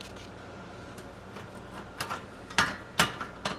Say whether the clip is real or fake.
real